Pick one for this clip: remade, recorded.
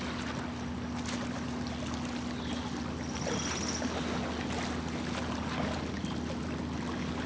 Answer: recorded